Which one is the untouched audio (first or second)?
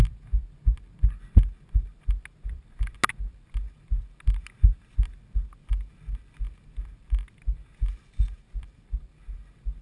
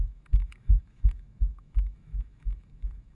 first